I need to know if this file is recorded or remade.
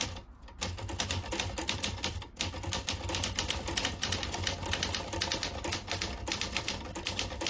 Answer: remade